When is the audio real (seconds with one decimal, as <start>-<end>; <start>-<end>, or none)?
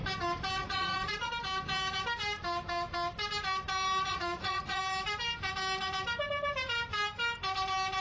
0.0-0.6; 1.3-4.1; 4.8-8.0